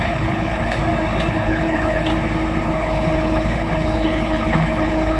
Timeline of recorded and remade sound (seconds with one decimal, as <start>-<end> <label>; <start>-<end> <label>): 0.0-0.8 remade; 0.8-1.3 recorded; 1.3-2.1 remade; 2.1-2.6 recorded; 2.6-5.2 remade